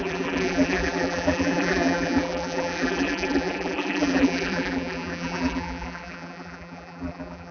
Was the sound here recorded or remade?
remade